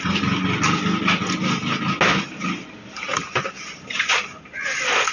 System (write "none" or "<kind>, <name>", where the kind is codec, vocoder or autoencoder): none